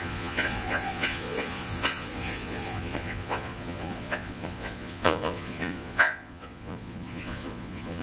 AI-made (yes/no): yes